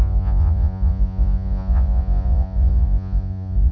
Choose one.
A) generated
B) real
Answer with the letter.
A